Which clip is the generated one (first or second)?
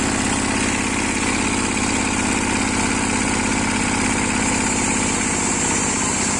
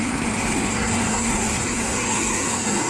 second